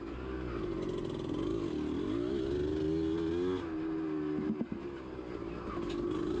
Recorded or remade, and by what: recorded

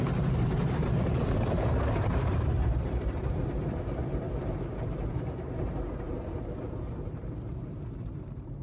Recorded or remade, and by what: remade, vocoder, BigVGAN v2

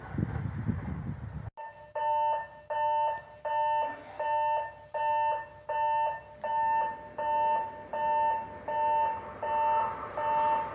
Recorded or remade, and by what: recorded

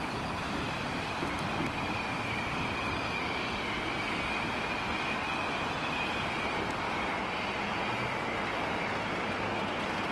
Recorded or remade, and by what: recorded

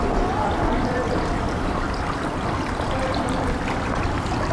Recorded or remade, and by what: remade, vocoder, BigVGAN v2